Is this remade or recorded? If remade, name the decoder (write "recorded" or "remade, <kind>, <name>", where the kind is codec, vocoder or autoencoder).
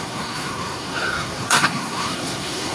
remade, codec, SNAC